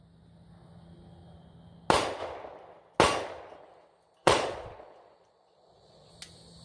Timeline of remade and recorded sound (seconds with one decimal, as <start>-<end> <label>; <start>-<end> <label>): 0.0-4.2 recorded; 4.2-6.1 remade; 6.1-6.6 recorded